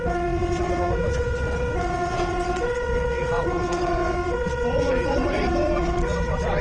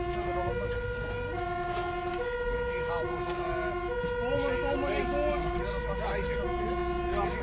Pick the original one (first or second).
second